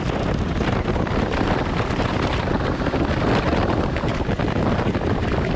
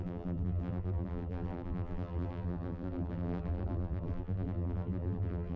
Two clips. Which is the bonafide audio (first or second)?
first